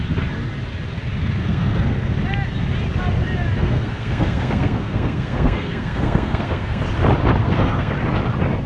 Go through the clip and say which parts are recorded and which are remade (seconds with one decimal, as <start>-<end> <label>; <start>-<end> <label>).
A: 0.0-1.4 recorded; 1.4-2.1 remade; 2.1-3.6 recorded; 3.6-6.8 remade; 6.8-7.4 recorded; 7.4-7.9 remade; 7.9-8.7 recorded